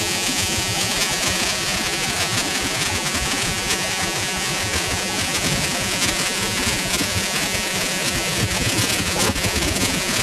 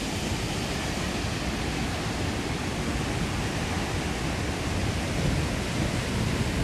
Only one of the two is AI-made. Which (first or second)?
first